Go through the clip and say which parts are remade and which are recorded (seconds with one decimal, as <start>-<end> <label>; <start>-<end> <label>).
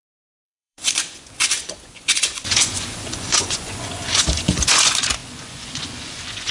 0.0-6.5 remade